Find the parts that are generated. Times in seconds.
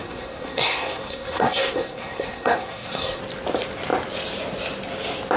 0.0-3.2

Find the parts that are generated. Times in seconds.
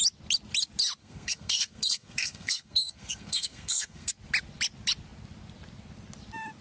1.0-4.1